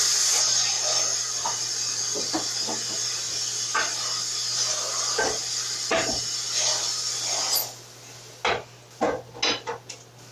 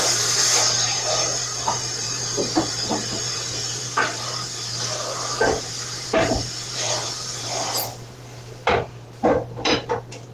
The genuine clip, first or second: first